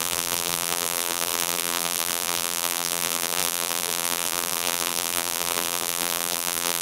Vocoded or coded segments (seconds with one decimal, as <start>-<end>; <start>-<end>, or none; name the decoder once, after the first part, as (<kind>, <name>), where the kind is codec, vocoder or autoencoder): 0.0-6.8 (vocoder, BigVGAN v2)